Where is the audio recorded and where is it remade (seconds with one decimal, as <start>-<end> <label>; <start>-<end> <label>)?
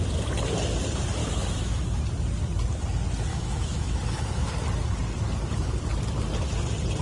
0.0-1.2 recorded; 1.2-2.0 remade; 2.0-3.3 recorded; 3.3-4.5 remade; 4.5-7.0 recorded